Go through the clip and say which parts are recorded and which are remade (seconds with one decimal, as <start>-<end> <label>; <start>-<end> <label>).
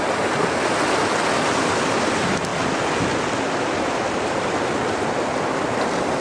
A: 0.0-6.2 recorded